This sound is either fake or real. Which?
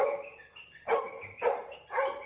fake